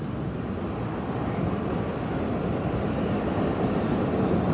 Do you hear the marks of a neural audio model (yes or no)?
no